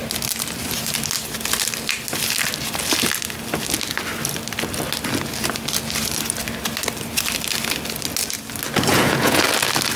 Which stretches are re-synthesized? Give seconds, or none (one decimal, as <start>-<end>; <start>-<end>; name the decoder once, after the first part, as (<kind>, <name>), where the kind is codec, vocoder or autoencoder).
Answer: 8.9-9.4 (vocoder, Vocos)